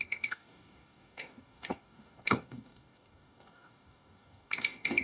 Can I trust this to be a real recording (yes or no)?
no